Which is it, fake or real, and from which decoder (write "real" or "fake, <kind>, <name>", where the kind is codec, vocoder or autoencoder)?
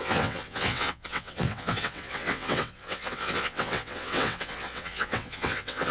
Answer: fake, vocoder, WaveNeXt